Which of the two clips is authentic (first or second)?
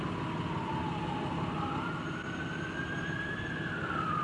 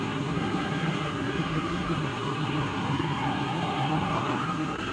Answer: first